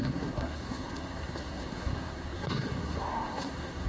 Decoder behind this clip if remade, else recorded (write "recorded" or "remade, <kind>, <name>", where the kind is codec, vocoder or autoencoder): remade, codec, SNAC